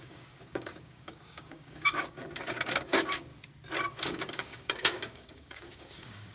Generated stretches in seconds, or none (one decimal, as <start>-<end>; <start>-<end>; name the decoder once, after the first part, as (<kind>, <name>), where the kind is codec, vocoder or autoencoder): 0.0-3.3 (codec, DAC); 4.0-6.3